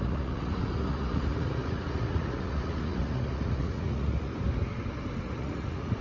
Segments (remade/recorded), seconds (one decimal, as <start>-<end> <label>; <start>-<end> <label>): 0.0-4.3 remade; 4.3-5.2 recorded; 5.2-6.0 remade